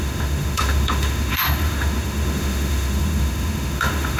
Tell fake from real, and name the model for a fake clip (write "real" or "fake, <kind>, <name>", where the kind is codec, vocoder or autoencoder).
fake, autoencoder, DAC-VAE